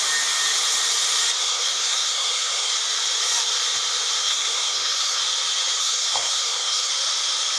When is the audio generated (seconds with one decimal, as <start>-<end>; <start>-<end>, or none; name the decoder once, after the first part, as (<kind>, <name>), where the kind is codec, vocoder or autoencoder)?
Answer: 1.4-2.7 (codec, SNAC); 4.2-5.2; 5.8-6.9